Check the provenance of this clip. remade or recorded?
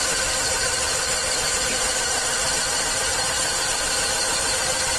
remade